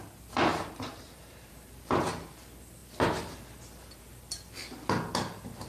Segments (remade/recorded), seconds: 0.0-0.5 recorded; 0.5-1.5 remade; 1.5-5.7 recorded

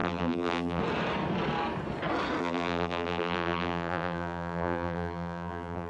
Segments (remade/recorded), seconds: 0.0-0.8 remade; 0.8-2.4 recorded; 2.4-5.9 remade

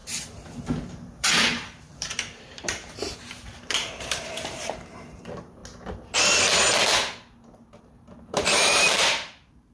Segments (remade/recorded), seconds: 0.0-5.6 remade; 5.6-7.8 recorded; 7.8-9.7 remade

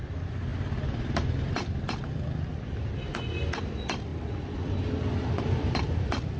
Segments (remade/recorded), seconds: 0.0-0.5 recorded; 0.5-2.1 remade; 2.1-4.1 recorded; 4.1-6.4 remade

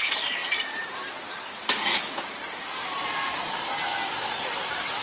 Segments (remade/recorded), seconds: 0.0-0.4 recorded; 0.4-3.4 remade; 3.4-5.0 recorded

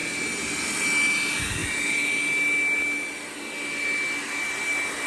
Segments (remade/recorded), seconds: 0.0-5.1 recorded

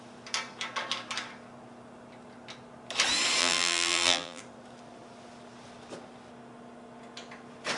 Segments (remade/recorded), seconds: 0.0-3.4 recorded; 3.4-4.4 remade; 4.4-7.8 recorded

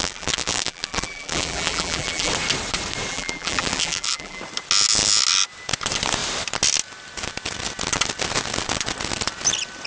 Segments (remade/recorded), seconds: 0.0-2.3 remade; 2.3-3.1 recorded; 3.1-4.4 remade; 4.4-9.9 recorded